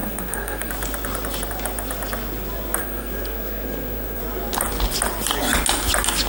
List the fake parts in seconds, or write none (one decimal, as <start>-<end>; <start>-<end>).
0.0-0.7; 2.8-4.2